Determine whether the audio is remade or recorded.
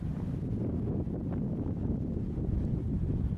recorded